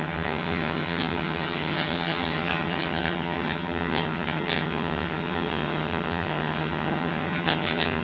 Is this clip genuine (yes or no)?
no